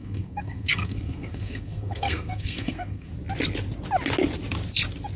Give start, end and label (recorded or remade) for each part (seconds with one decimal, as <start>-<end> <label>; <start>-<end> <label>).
0.0-3.1 remade; 3.1-5.2 recorded